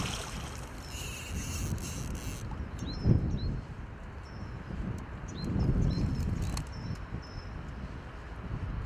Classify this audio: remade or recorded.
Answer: recorded